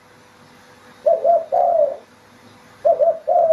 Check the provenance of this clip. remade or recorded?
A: recorded